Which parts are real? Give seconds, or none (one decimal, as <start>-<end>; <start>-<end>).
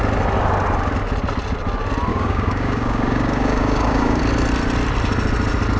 0.0-2.1; 4.2-5.8